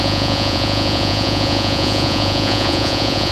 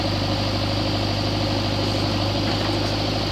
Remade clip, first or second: first